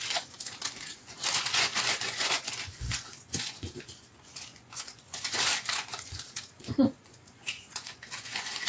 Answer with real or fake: fake